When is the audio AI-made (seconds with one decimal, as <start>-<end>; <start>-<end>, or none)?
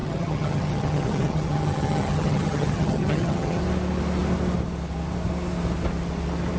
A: 0.0-3.6